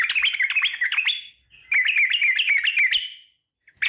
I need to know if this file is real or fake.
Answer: real